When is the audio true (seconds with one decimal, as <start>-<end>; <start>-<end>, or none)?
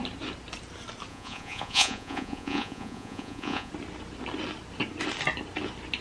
0.0-1.1; 3.7-6.0